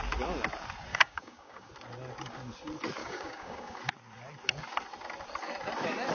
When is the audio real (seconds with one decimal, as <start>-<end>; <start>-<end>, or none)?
0.0-0.9; 1.7-3.0; 3.8-6.1